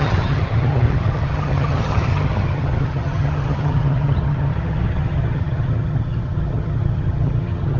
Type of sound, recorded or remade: remade